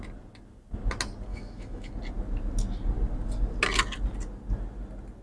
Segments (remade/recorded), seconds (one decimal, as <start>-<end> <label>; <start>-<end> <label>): 0.0-1.3 recorded; 1.3-1.9 remade; 1.9-5.2 recorded